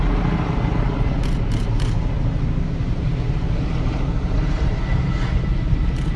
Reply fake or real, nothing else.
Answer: real